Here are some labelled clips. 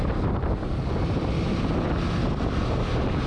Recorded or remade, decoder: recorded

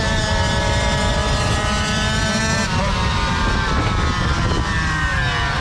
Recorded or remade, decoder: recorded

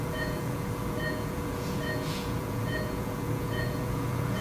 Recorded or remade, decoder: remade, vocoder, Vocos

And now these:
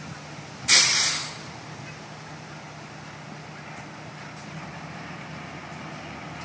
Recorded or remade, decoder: recorded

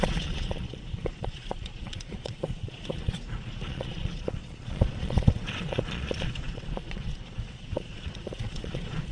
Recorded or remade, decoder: remade, vocoder, Vocos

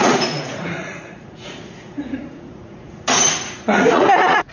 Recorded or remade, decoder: remade, vocoder, Vocos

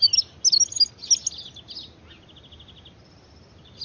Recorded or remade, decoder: recorded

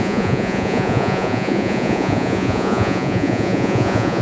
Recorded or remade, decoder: remade, vocoder, Vocos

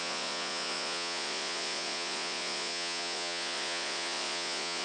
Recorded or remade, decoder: remade, vocoder, Vocos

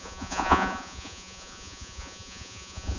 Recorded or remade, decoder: remade, vocoder, Vocos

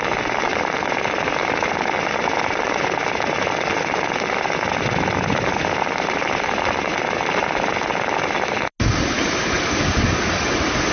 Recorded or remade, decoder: recorded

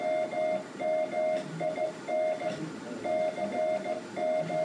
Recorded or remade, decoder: recorded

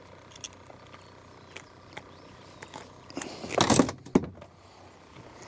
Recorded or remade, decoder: recorded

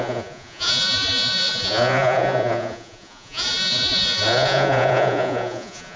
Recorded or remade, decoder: remade, vocoder, Vocos